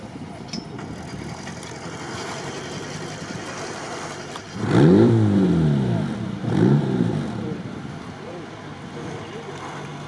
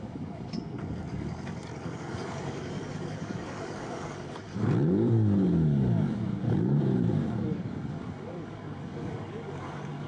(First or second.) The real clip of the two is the first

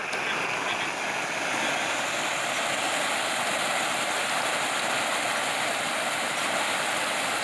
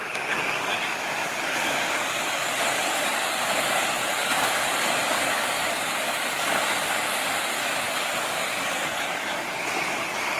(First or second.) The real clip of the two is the first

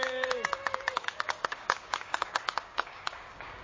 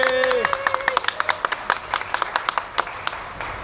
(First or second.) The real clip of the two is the second